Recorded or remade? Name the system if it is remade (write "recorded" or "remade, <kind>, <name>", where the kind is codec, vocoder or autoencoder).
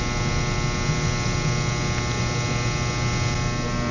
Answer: recorded